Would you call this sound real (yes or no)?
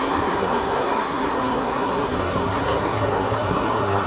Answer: no